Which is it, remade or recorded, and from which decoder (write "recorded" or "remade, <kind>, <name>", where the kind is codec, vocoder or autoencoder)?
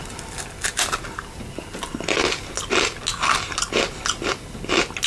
recorded